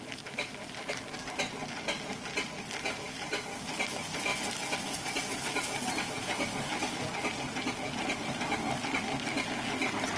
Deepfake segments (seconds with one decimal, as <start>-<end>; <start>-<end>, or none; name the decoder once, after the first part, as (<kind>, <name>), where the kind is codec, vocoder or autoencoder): none